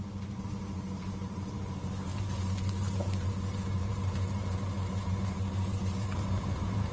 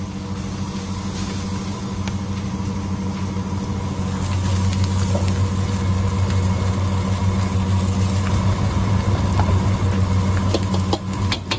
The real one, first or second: second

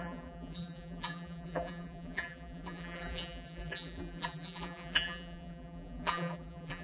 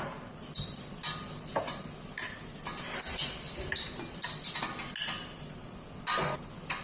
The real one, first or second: second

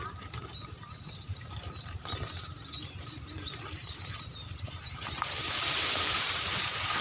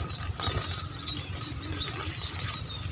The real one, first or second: second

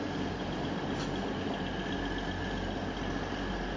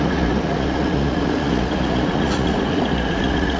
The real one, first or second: first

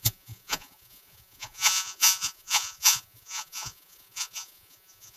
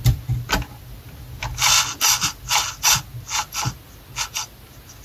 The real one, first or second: second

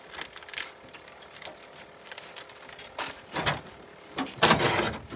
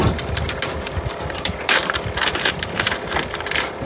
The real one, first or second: first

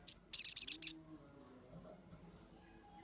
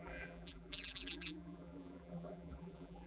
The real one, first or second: first